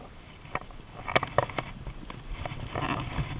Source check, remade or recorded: recorded